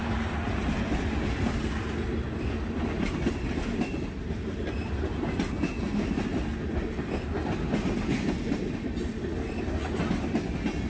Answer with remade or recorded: recorded